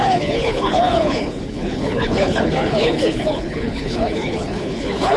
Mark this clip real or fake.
fake